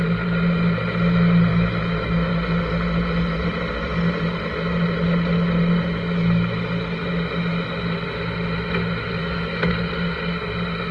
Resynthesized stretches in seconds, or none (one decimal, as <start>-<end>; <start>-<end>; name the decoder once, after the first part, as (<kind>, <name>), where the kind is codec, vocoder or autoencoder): 1.5-2.3 (autoencoder, DAC-VAE); 9.2-9.7